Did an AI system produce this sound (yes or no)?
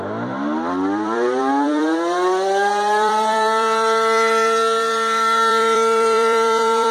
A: yes